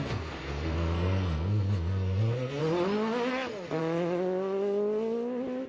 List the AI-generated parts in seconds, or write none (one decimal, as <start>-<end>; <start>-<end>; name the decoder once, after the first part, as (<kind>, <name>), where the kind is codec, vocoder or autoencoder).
0.0-2.6 (codec, SNAC); 3.3-3.8